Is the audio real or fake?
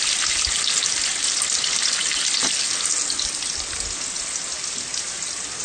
real